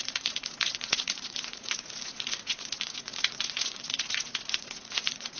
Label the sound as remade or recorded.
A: remade